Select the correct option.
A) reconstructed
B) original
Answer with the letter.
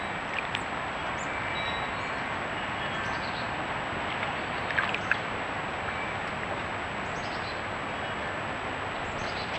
B